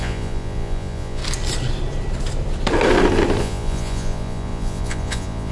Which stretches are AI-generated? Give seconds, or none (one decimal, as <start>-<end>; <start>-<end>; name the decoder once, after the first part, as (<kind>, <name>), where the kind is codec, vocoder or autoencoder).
0.0-1.2 (vocoder, Vocos); 3.4-5.5